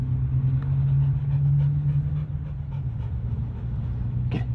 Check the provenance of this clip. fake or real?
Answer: real